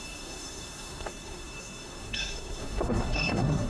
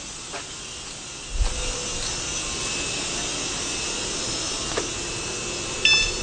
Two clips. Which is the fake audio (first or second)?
first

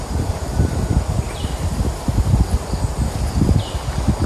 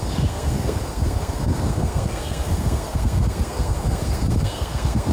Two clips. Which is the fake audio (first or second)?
second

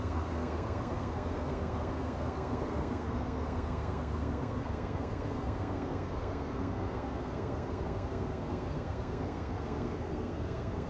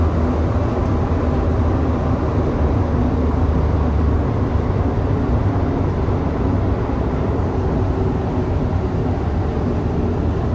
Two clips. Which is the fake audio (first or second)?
first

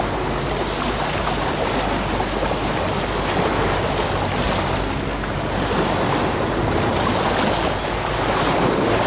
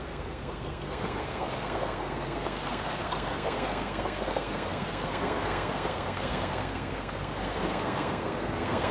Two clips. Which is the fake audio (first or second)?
second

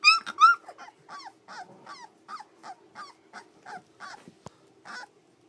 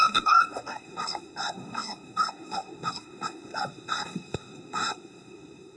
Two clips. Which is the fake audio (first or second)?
second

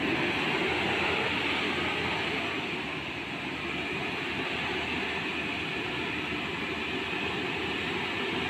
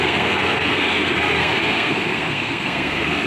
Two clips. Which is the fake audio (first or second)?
second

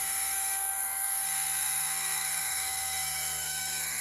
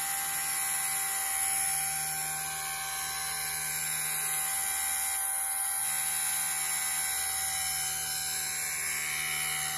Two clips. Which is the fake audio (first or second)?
first